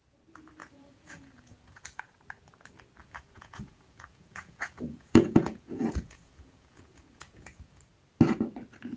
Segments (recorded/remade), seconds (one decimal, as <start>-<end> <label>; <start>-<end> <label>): 0.0-0.6 recorded; 0.6-2.0 remade; 2.0-3.0 recorded; 3.0-7.8 remade; 7.8-9.0 recorded